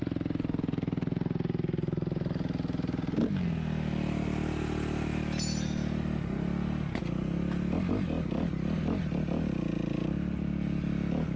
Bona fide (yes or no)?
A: yes